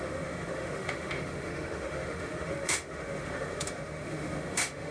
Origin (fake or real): fake